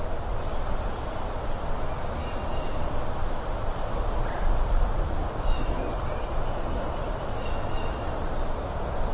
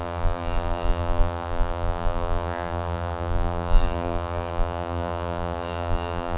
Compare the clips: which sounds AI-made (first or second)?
second